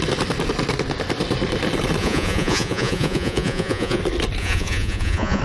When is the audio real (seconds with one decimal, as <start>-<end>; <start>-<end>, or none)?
0.0-2.0; 4.0-4.4

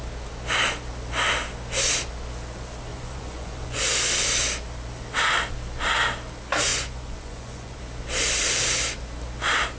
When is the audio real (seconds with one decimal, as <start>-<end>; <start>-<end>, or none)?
0.0-2.9; 3.8-6.7; 7.8-9.8

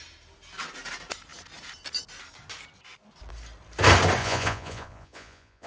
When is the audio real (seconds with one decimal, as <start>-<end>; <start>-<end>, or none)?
0.0-4.2

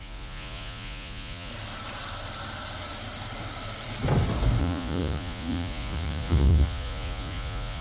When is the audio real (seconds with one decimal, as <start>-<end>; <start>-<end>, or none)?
1.5-4.6

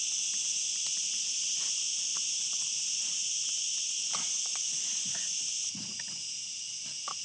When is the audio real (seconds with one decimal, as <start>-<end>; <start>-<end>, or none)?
0.0-2.1; 3.2-4.5; 6.6-7.2

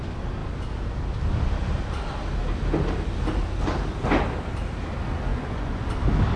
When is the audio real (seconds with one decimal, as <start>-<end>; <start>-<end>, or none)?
0.0-5.3; 5.8-6.4